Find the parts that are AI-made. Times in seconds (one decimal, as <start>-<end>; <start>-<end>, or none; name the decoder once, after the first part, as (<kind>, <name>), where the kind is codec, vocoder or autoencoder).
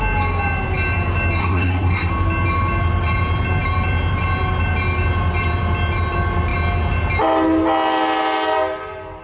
1.4-2.1 (codec, SNAC)